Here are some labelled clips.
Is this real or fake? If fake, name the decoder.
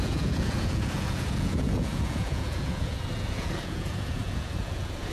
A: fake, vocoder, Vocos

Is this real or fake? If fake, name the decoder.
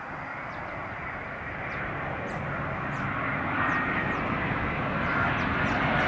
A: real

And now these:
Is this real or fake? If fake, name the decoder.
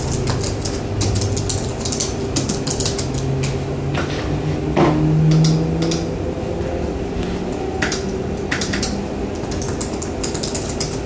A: real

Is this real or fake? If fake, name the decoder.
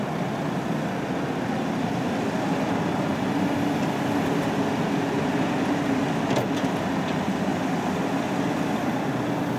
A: real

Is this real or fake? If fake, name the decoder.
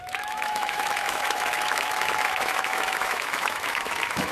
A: fake, autoencoder, DAC-VAE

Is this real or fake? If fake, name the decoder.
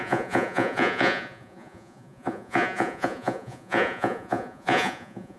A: fake, vocoder, Vocos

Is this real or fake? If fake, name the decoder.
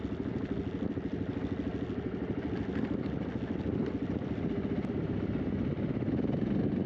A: real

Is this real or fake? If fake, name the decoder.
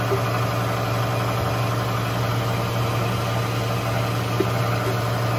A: real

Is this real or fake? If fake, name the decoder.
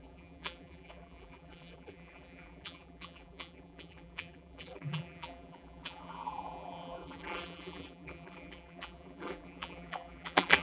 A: fake, vocoder, BigVGAN v2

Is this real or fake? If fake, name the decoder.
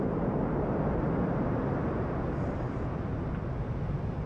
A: real